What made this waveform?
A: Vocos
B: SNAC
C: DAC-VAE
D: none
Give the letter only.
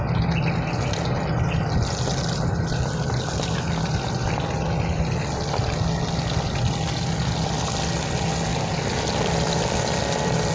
D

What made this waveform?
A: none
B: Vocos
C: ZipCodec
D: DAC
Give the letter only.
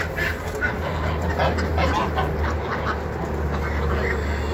A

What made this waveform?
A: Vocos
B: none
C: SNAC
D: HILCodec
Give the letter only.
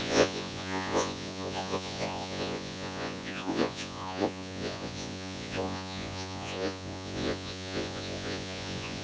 A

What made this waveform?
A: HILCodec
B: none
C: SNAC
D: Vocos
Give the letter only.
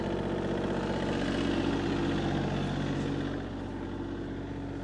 B